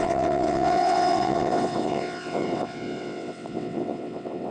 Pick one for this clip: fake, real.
fake